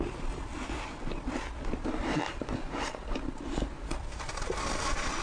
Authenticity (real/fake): real